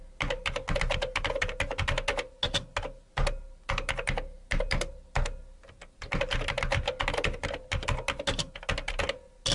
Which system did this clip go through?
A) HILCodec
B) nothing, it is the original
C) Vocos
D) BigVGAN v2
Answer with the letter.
B